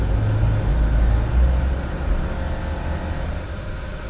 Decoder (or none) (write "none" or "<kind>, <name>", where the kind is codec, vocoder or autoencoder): none